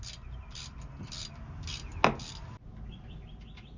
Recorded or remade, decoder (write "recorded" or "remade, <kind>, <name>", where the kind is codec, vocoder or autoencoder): recorded